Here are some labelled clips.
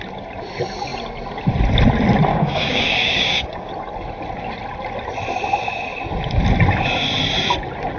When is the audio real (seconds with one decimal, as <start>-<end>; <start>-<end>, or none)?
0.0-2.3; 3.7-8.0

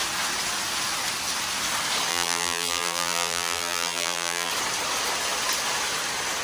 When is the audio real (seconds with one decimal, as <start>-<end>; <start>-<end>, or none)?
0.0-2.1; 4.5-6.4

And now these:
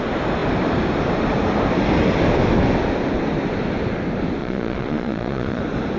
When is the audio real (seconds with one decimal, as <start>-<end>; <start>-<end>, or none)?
0.0-4.4; 5.6-6.0

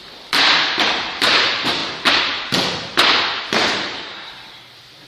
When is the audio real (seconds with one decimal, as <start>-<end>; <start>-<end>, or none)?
1.8-3.4

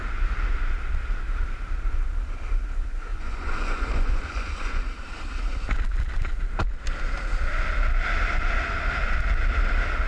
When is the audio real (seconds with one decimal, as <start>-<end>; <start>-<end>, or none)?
0.0-3.1; 4.8-10.1

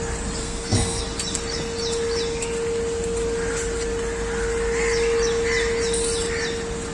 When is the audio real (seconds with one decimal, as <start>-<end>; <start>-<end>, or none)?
0.0-0.4; 1.0-6.9